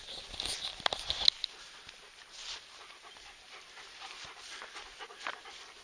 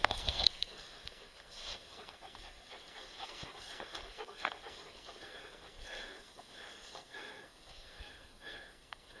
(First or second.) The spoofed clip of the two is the second